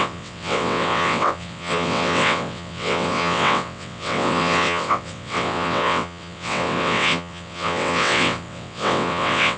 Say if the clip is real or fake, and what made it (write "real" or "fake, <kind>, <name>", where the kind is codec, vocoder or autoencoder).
fake, vocoder, WaveNeXt